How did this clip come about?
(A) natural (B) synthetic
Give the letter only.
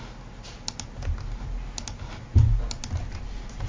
A